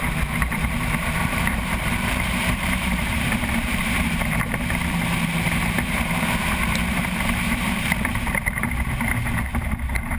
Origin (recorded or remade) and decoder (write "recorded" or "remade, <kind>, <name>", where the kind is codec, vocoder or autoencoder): remade, vocoder, BigVGAN v2